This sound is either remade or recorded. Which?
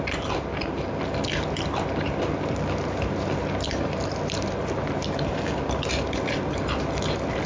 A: recorded